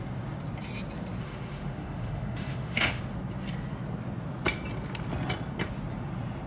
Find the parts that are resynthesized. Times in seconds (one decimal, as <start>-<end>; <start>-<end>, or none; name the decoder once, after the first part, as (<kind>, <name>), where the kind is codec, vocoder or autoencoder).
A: 1.2-3.0 (autoencoder, DAC-VAE)